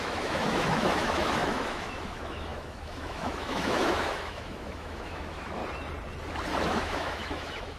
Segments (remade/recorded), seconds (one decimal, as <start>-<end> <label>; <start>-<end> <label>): 0.0-5.6 remade; 5.6-6.6 recorded; 6.6-7.8 remade